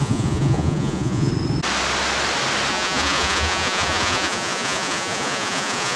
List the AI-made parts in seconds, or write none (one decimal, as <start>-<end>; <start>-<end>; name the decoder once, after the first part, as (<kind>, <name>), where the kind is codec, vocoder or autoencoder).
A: 0.0-1.3 (vocoder, Vocos); 2.7-6.0